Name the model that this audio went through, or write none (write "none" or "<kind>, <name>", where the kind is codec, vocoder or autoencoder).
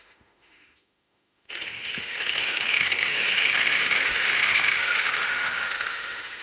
autoencoder, DAC-VAE